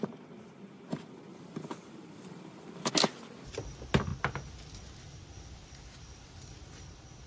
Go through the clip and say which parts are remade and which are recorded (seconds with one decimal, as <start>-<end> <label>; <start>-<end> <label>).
0.0-1.3 recorded; 1.3-2.9 remade; 2.9-7.3 recorded

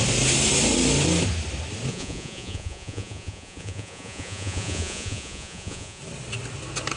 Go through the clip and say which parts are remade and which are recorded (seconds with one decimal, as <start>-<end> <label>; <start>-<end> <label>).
0.0-1.9 recorded; 1.9-6.0 remade; 6.0-7.0 recorded

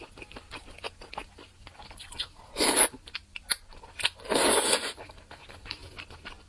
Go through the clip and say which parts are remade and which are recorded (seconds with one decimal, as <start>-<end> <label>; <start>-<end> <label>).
0.0-6.5 recorded

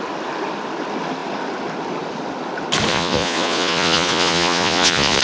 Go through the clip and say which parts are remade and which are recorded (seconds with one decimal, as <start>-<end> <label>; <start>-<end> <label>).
0.0-2.9 recorded; 2.9-5.2 remade